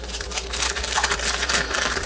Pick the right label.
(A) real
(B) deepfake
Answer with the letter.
B